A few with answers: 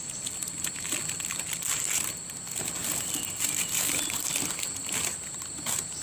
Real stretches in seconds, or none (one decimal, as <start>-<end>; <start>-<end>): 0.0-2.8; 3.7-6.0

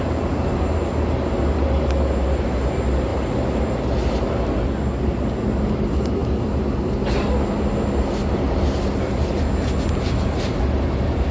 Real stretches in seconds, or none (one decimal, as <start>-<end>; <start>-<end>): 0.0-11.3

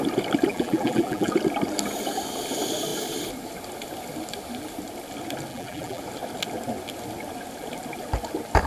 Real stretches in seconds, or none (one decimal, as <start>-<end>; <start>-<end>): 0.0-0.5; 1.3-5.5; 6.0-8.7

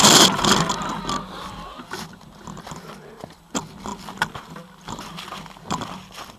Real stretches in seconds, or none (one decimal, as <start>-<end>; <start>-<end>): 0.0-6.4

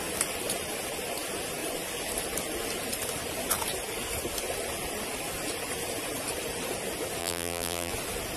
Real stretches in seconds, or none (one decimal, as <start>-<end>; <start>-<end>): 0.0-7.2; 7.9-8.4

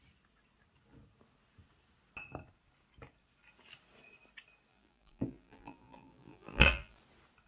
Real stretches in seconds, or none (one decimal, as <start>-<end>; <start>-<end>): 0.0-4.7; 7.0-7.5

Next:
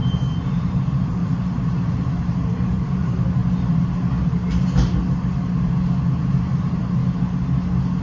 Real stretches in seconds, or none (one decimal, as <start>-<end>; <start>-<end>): 3.4-6.3; 7.0-8.0

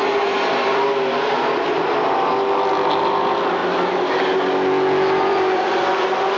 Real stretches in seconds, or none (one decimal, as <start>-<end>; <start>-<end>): 0.0-6.4